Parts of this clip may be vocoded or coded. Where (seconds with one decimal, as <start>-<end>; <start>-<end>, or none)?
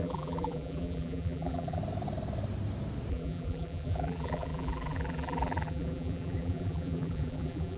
0.0-1.8; 3.1-7.8